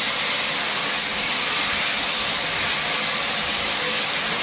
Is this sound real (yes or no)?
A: yes